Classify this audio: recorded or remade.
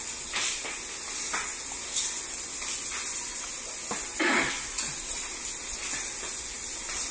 recorded